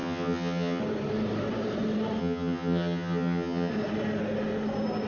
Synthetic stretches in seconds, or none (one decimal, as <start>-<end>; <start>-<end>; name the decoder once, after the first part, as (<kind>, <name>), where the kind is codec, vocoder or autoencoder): 0.0-0.8 (vocoder, HiFi-GAN); 2.2-3.7